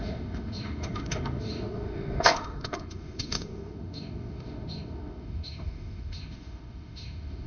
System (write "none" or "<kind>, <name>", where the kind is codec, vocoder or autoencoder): autoencoder, DAC-VAE